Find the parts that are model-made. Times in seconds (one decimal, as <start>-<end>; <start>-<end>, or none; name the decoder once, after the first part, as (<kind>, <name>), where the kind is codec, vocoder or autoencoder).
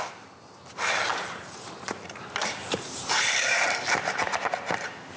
1.1-4.2 (vocoder, BigVGAN v2)